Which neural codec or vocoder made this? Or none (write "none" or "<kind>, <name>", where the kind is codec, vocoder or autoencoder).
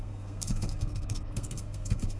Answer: codec, SNAC